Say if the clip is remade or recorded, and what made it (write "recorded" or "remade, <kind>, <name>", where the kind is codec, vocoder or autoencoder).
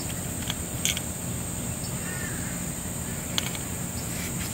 recorded